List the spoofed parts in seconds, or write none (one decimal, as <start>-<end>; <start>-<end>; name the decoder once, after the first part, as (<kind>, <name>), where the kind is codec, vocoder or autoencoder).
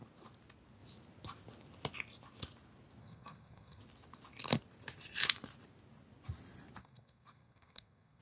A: 3.0-3.8 (codec, SNAC); 6.8-8.2